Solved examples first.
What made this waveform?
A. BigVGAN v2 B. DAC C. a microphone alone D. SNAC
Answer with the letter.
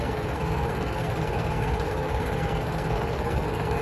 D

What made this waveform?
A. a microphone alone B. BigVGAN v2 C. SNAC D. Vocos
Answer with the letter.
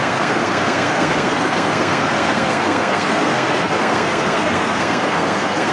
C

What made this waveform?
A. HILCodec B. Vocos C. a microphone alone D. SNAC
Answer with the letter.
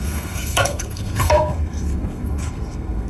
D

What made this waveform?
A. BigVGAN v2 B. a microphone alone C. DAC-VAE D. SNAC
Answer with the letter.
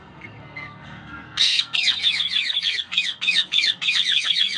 D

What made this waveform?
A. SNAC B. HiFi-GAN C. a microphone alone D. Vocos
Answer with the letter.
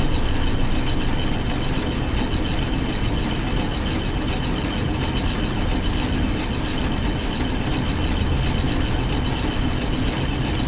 C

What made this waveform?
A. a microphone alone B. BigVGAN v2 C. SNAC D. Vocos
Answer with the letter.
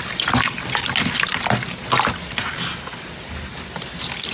A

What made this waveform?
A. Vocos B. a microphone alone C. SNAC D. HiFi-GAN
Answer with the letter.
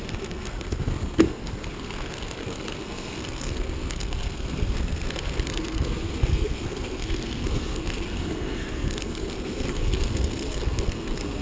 C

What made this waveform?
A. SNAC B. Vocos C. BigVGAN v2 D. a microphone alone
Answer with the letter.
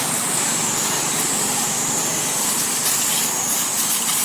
D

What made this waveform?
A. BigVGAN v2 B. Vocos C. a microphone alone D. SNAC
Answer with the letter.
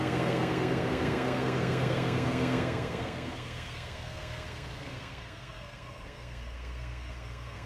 D